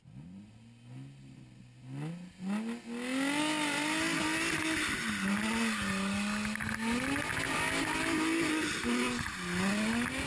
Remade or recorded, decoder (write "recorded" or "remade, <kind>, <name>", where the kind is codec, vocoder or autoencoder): recorded